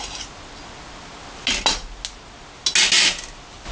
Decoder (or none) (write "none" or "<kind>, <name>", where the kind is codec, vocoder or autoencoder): none